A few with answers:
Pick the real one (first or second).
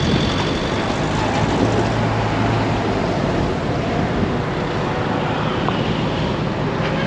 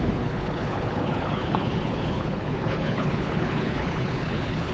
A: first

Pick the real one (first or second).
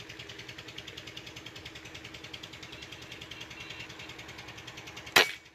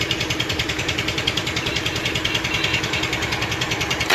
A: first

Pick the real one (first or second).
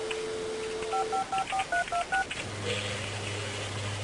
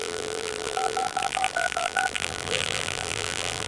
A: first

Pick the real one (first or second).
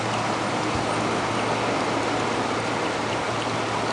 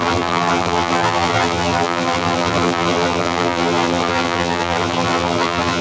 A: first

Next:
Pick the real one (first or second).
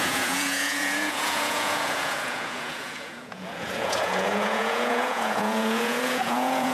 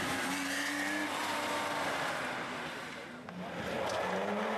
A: second